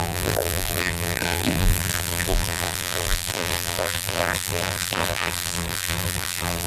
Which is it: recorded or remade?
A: remade